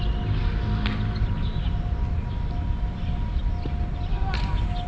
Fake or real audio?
real